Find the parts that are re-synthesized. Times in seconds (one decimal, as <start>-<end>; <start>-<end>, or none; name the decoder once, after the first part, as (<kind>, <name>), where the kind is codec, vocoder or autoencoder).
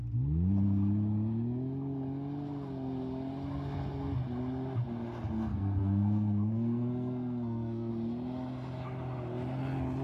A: 5.5-7.9 (codec, SNAC)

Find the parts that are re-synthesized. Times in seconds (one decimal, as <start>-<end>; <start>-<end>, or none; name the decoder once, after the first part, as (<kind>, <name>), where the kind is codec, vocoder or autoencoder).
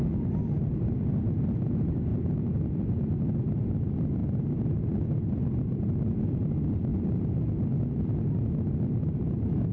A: none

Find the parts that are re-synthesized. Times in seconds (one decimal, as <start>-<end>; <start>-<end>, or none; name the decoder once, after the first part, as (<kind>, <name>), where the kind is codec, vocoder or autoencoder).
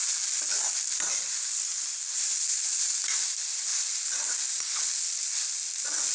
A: none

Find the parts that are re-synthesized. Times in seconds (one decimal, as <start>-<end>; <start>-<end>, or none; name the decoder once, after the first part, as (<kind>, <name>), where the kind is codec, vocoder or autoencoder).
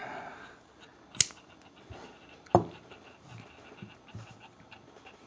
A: none